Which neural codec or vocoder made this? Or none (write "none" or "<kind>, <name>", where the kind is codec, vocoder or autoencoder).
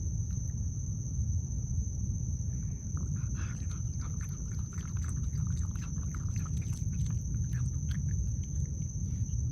none